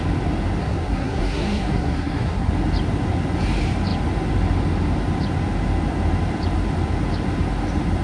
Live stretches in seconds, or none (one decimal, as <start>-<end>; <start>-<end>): 0.0-0.6; 2.5-8.0

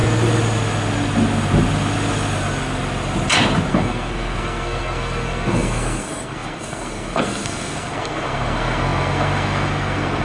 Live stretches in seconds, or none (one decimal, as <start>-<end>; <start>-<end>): 0.0-3.7

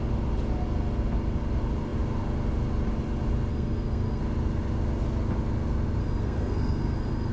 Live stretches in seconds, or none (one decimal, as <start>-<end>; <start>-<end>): 0.0-3.5; 4.2-6.0

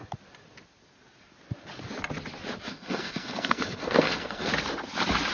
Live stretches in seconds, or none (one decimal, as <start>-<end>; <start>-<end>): 0.0-2.7; 4.5-5.3

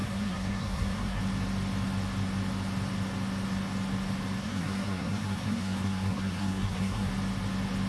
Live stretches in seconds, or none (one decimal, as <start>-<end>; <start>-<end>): 1.2-4.4; 7.1-7.9